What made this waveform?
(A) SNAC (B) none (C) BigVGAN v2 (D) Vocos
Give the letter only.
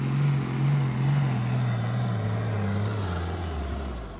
B